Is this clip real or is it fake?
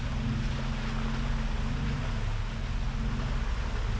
real